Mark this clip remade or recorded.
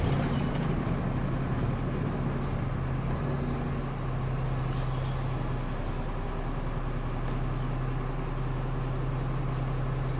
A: recorded